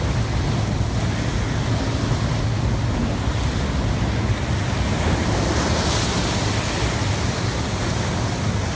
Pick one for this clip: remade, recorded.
recorded